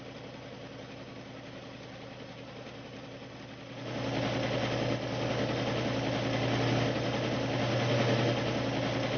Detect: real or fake real